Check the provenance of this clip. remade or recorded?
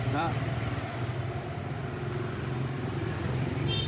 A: remade